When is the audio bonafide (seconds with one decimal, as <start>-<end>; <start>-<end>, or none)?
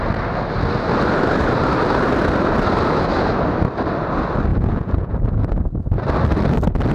0.0-4.5; 5.6-6.9